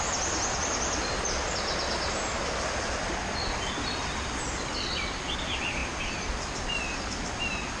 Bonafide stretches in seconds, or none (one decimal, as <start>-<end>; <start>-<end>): 0.0-7.8